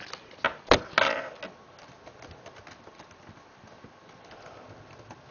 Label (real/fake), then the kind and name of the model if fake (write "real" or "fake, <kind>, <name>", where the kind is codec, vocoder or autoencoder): real